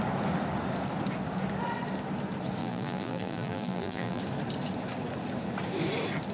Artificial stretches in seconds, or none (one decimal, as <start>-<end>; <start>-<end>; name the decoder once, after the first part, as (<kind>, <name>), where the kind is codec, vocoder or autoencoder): 2.6-4.2 (vocoder, BigVGAN v2)